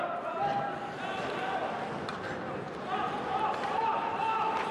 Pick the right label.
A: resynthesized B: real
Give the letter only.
B